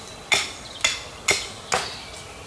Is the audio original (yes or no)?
yes